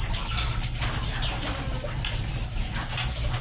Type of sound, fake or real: real